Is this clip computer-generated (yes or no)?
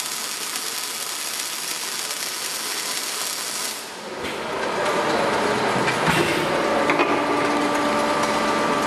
no